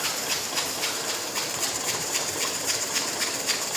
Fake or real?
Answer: fake